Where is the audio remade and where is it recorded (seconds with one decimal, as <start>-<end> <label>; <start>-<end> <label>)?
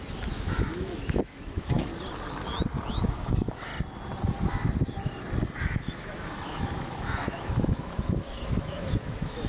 0.0-1.9 remade; 1.9-2.9 recorded; 2.9-3.7 remade; 3.7-5.6 recorded; 5.6-9.5 remade